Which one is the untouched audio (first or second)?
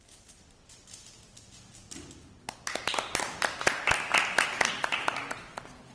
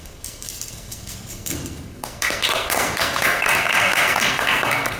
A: first